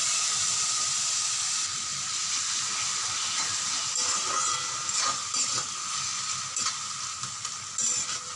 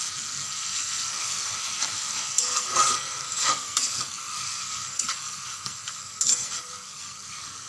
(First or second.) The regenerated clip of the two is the second